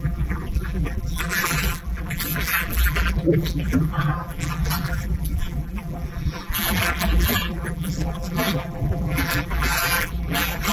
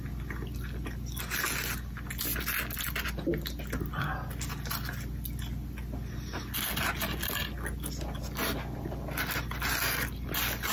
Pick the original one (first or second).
second